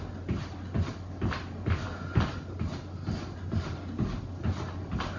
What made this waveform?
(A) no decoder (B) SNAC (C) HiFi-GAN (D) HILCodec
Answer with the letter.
A